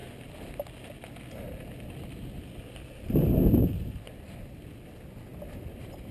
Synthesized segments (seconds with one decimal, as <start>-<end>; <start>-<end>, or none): 5.3-6.1